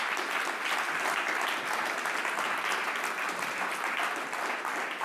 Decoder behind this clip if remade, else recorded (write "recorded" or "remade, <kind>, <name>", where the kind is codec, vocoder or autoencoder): recorded